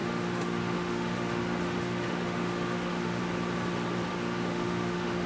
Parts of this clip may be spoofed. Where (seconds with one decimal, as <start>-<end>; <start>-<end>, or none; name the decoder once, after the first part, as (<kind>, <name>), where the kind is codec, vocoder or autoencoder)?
0.0-3.2 (autoencoder, DAC-VAE); 4.1-5.3